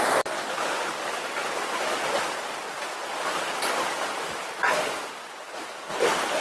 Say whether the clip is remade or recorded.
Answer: recorded